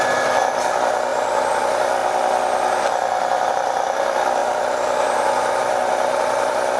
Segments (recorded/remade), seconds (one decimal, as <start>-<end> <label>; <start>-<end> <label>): 0.0-6.8 recorded